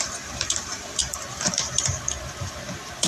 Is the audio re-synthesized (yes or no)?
yes